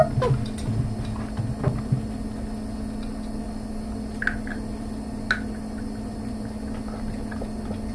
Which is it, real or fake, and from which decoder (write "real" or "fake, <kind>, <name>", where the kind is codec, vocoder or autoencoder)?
real